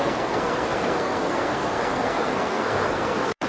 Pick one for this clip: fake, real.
fake